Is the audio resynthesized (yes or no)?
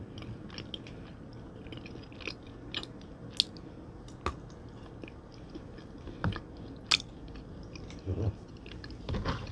no